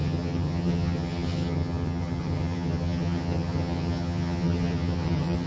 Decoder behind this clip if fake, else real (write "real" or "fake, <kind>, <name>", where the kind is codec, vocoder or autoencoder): fake, vocoder, HiFi-GAN